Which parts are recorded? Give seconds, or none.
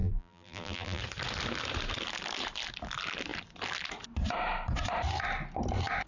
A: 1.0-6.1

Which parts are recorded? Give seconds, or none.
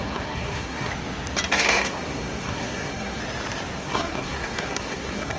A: 0.9-1.5; 3.2-3.8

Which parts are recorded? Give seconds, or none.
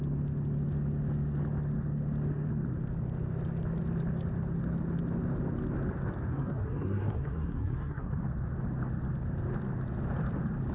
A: 0.0-6.3; 8.2-10.7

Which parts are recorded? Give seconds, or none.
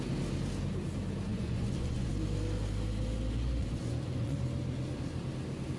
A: 0.0-1.3; 2.1-3.6; 4.4-5.8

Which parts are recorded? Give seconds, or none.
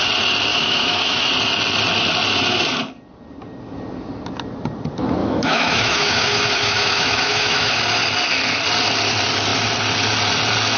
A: 0.0-0.5; 1.3-5.2; 7.8-10.8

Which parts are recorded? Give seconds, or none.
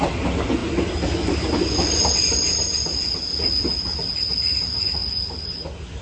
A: 0.0-6.0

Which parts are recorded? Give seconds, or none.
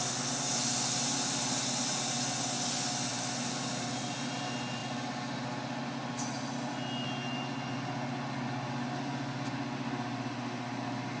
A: 0.0-11.2